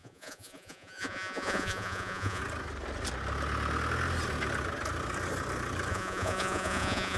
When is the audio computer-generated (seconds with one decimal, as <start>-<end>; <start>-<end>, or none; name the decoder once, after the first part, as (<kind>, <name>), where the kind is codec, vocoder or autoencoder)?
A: 0.0-2.4 (vocoder, Vocos); 5.9-7.2